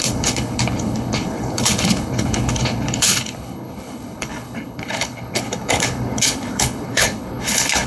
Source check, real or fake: fake